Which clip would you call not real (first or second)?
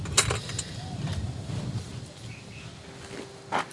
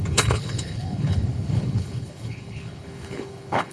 second